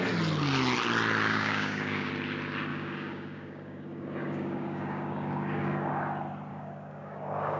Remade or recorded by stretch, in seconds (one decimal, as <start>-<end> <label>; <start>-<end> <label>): 0.0-1.3 recorded; 1.3-2.1 remade; 2.1-2.7 recorded; 2.7-5.9 remade; 5.9-6.5 recorded; 6.5-7.6 remade